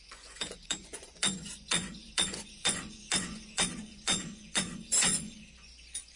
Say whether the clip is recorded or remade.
remade